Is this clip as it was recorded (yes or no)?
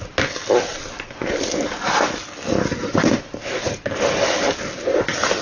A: yes